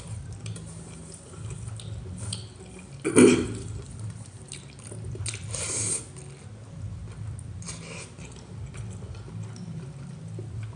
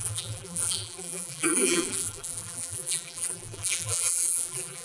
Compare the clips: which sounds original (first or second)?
first